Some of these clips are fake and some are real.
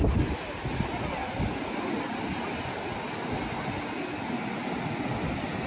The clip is real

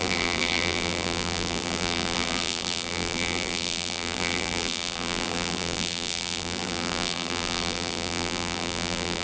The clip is fake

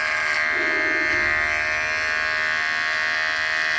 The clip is real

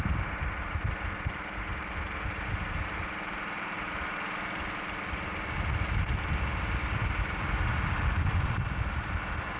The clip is real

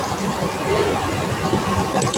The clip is real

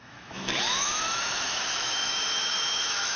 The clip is fake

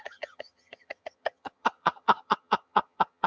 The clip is fake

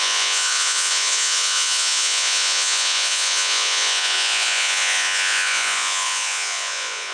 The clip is fake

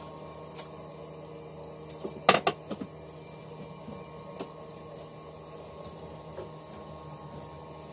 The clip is real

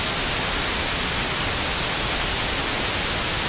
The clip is real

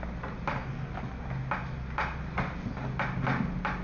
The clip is real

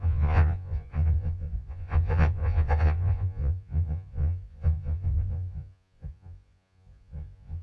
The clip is fake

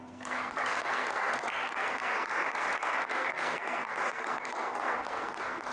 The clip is fake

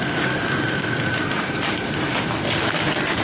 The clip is real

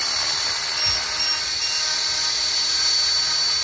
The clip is real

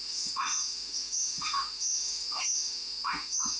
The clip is fake